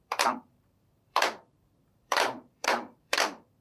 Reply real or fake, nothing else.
fake